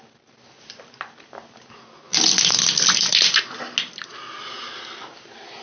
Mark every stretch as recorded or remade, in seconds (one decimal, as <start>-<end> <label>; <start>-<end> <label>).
0.0-5.6 recorded